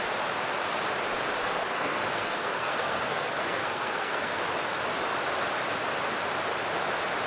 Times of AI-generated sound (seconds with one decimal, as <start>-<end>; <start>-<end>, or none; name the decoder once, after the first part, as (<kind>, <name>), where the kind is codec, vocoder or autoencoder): 1.4-4.4 (codec, SNAC)